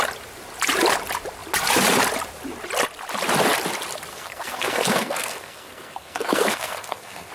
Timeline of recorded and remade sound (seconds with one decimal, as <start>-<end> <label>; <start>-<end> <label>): 0.0-4.1 recorded; 4.1-7.3 remade